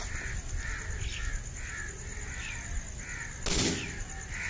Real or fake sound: real